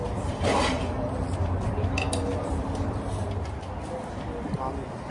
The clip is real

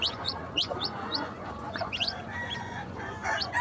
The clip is fake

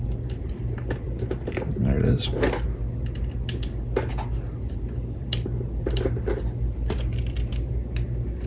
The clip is real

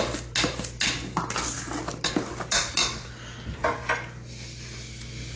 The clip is real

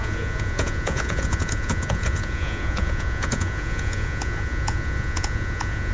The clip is fake